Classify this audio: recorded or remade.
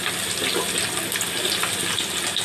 recorded